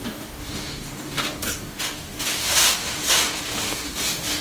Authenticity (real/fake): fake